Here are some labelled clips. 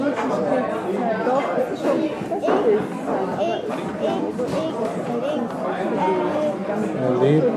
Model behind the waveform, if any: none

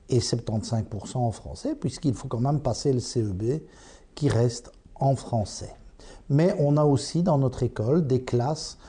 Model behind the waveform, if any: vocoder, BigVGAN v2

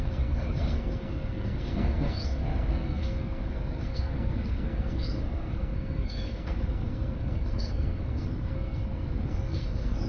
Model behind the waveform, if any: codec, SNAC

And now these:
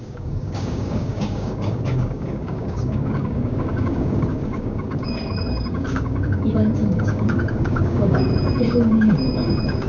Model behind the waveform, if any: codec, DAC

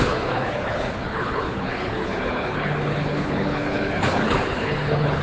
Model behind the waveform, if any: codec, HILCodec